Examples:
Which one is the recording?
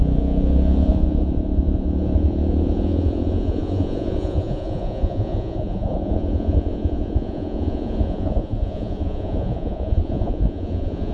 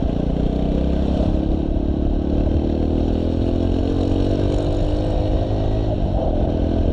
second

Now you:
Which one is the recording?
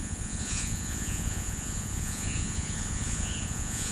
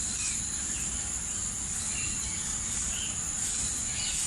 second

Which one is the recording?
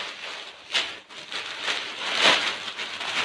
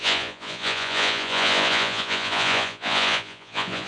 first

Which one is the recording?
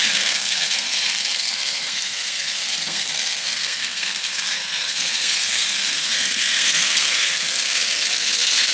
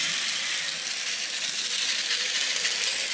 second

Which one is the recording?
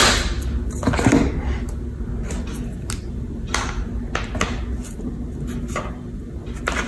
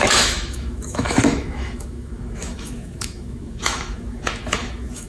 first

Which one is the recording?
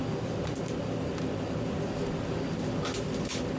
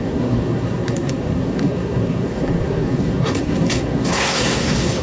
first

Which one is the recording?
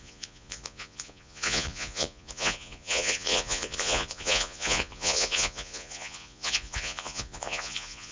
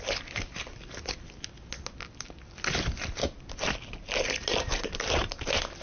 second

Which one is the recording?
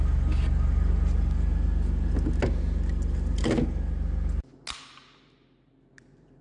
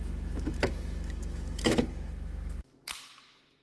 first